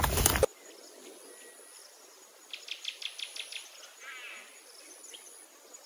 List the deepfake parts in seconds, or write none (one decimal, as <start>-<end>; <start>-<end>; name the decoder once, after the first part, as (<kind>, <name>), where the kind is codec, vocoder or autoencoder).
none